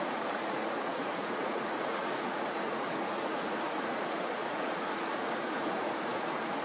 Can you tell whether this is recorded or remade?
remade